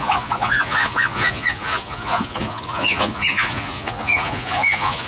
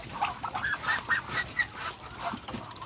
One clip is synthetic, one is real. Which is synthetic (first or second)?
first